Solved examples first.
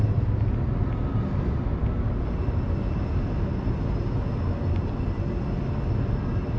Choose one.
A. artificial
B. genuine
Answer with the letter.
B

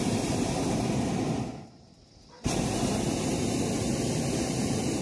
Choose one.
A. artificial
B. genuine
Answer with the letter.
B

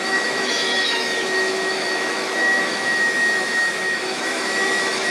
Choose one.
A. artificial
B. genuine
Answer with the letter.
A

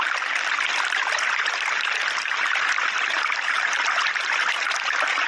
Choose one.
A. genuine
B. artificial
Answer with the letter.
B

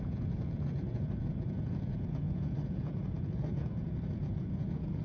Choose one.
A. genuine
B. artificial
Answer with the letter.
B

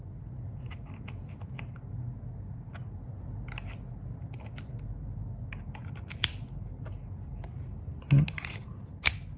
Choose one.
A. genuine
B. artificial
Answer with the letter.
A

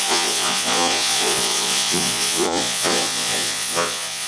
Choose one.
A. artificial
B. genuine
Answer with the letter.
A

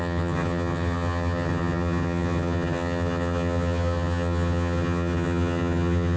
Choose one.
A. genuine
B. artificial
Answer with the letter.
B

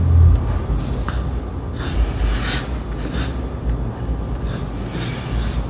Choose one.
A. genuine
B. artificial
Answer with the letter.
A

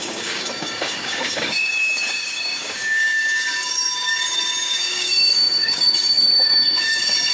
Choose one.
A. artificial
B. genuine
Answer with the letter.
A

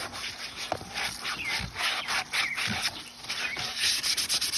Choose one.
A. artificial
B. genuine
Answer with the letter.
B